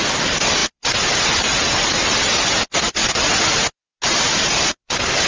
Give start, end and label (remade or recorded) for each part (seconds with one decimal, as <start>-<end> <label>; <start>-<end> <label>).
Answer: 0.0-5.3 recorded